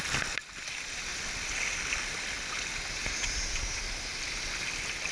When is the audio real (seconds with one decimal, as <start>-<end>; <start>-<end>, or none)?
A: 0.0-5.1